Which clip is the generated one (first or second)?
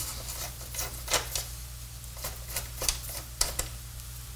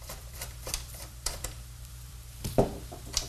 second